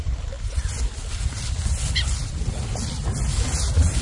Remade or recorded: recorded